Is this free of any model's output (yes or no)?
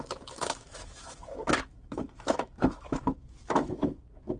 no